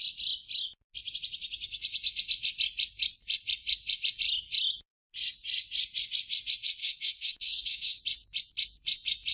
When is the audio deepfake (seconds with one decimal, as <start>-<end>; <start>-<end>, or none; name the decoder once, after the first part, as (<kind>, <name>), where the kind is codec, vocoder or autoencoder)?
6.8-8.0 (codec, DAC)